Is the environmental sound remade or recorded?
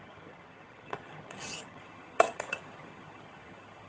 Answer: remade